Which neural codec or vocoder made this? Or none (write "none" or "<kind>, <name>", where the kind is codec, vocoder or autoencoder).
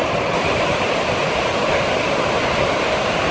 none